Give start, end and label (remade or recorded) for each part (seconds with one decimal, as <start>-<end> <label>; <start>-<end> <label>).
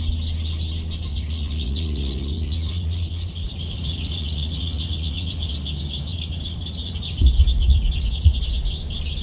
0.0-1.1 recorded; 1.1-5.5 remade; 5.5-6.1 recorded; 6.1-8.7 remade; 8.7-9.2 recorded